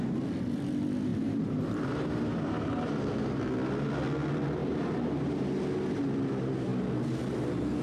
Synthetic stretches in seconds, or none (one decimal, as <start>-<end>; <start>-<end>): 1.1-3.4; 4.6-5.5